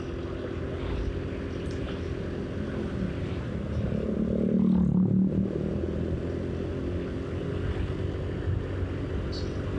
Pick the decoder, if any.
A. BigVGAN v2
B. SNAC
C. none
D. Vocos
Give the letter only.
C